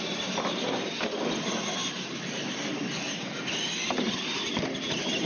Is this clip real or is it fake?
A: real